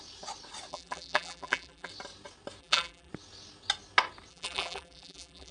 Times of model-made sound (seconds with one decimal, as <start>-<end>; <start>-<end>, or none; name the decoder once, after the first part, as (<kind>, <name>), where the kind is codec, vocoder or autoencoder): 0.7-1.9 (vocoder, BigVGAN v2); 2.6-3.1; 4.3-5.5